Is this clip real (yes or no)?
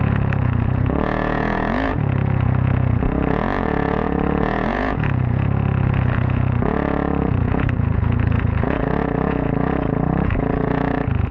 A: no